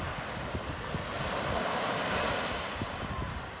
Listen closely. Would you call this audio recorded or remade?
recorded